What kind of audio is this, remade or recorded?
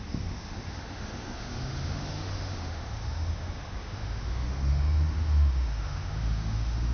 remade